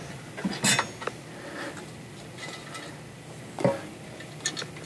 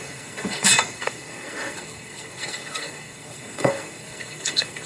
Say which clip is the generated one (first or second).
second